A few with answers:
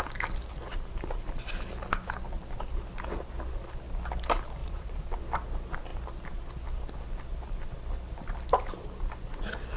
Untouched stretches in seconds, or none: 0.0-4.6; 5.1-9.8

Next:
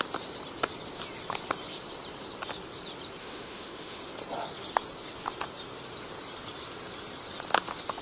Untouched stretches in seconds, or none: 0.0-3.2; 4.0-8.0

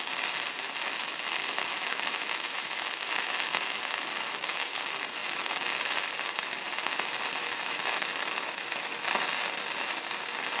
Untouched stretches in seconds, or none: 0.0-1.4; 4.8-5.2; 5.8-7.4; 8.9-10.6

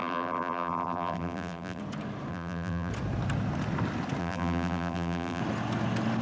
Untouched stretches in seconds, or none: 1.8-2.3; 2.9-4.2; 5.4-6.2

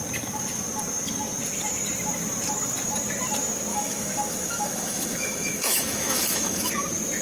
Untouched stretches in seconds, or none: 0.0-3.7; 6.7-7.2